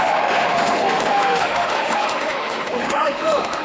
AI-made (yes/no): yes